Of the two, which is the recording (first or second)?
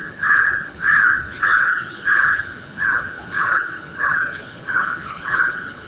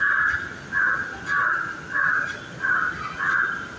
second